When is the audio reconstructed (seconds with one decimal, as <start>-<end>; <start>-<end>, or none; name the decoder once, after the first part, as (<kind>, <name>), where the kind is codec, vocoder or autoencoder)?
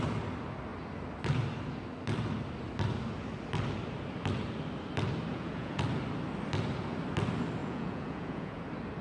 5.3-5.8 (vocoder, Vocos); 7.6-8.6